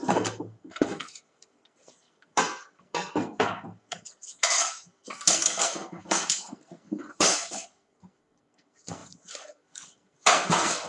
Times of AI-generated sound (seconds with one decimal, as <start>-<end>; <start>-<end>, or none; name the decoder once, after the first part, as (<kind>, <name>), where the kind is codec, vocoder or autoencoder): 0.0-10.9 (codec, SNAC)